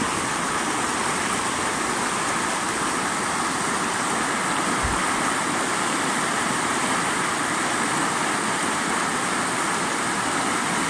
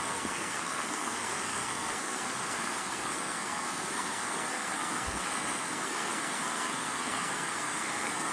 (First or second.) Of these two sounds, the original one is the first